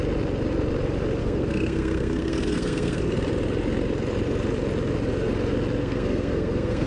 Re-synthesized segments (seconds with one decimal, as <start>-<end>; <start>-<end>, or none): 1.2-3.0; 5.8-6.9